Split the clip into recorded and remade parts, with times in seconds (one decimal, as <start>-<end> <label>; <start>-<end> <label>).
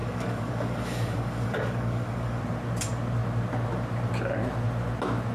0.0-2.4 remade; 2.4-5.3 recorded